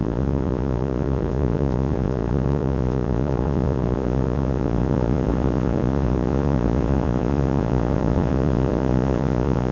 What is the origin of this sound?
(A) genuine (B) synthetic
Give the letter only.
B